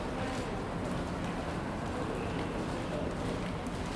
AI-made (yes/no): no